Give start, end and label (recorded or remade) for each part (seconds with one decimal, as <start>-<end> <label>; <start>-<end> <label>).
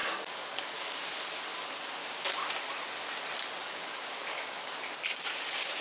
0.0-1.0 remade; 1.0-3.6 recorded; 3.6-4.7 remade; 4.7-5.8 recorded